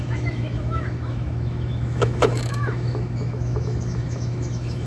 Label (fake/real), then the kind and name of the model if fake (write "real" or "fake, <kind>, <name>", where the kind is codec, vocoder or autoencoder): fake, autoencoder, DAC-VAE